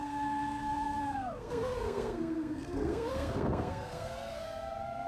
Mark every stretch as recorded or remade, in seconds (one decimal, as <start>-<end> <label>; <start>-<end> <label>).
0.0-5.1 remade